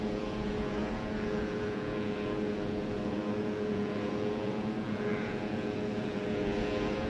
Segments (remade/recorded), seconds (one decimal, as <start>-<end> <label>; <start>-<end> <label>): 0.0-7.1 remade